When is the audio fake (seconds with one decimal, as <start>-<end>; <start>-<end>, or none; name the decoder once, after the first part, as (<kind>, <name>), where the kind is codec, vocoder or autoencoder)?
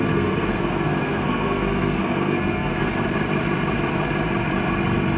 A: 0.0-2.9 (codec, SNAC)